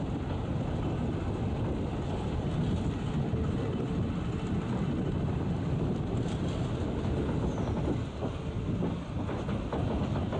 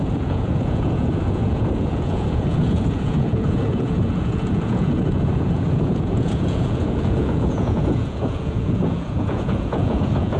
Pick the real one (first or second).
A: first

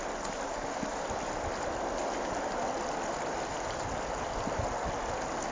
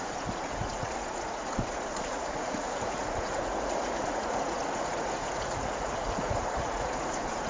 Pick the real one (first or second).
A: first